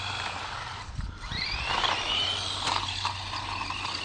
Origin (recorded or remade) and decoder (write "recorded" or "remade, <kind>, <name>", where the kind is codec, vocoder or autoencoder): recorded